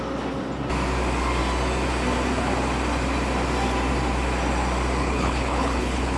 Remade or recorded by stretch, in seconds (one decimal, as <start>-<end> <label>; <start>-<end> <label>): 0.0-5.0 recorded; 5.0-6.2 remade